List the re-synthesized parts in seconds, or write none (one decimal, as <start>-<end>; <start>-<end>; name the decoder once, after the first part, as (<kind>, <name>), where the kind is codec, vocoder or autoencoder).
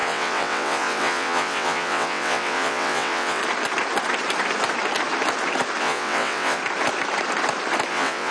0.0-3.4 (vocoder, WaveNeXt); 5.8-6.6; 7.9-8.3